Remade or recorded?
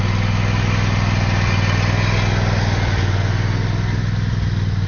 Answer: recorded